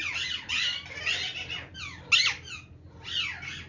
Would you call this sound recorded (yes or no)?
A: yes